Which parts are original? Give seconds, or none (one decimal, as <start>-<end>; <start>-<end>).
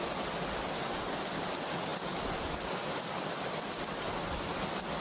0.0-1.9